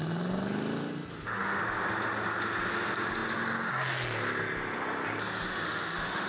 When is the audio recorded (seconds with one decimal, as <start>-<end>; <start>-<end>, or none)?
0.0-1.1; 1.6-5.5